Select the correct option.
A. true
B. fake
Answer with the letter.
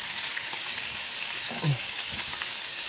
B